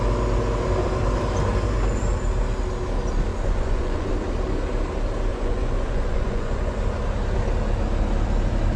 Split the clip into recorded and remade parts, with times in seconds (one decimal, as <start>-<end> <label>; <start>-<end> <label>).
0.0-3.3 recorded; 3.3-4.1 remade; 4.1-5.3 recorded; 5.3-6.8 remade; 6.8-8.8 recorded